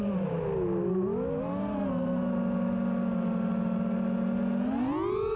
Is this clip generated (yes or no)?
no